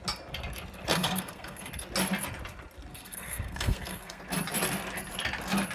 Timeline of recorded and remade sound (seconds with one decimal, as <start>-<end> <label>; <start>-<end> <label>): 0.0-0.9 recorded; 0.9-1.7 remade; 1.7-2.9 recorded; 2.9-4.2 remade; 4.2-5.7 recorded